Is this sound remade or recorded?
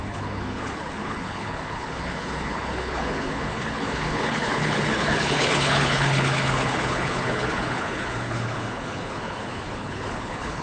remade